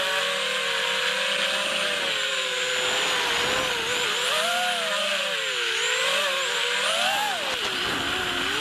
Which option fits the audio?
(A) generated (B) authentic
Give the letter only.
B